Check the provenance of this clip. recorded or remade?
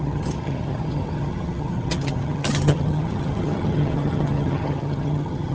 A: remade